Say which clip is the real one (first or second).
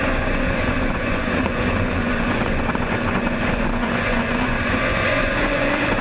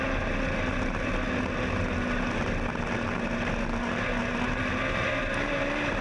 second